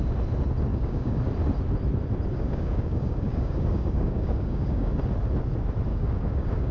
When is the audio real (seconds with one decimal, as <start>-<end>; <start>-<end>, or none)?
0.0-0.7; 1.2-2.3; 5.0-5.9